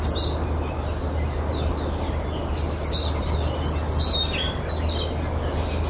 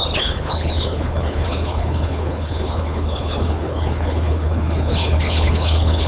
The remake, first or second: second